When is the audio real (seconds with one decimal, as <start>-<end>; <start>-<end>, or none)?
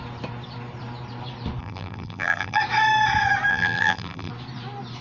0.0-1.6; 2.6-3.5; 4.3-5.0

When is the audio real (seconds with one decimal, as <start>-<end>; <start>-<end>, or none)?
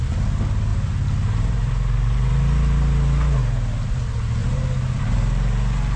0.0-0.7; 2.3-4.4